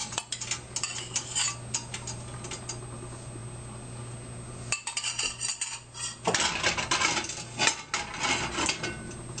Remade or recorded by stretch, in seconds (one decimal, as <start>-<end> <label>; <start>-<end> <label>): 0.0-9.4 recorded